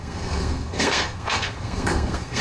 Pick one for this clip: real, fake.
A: fake